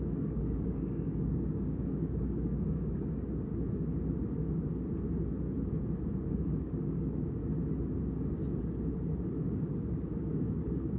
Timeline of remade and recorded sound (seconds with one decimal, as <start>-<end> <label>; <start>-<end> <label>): 0.0-3.5 remade; 3.5-6.3 recorded; 6.3-7.4 remade; 7.4-8.0 recorded; 8.0-8.4 remade; 8.4-9.3 recorded; 9.3-11.0 remade